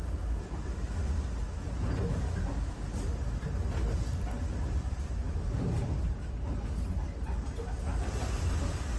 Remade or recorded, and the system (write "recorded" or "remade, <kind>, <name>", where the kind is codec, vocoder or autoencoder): recorded